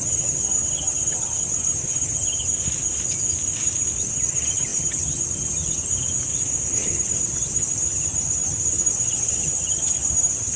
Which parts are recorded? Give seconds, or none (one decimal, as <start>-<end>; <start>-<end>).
2.4-4.0; 5.9-6.7